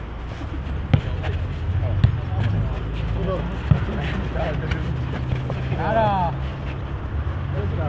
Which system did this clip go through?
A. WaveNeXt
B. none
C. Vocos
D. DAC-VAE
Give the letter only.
B